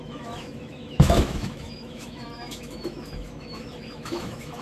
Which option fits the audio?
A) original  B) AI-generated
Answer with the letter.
B